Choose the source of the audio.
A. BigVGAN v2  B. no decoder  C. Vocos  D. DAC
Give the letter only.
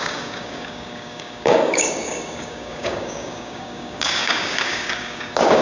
D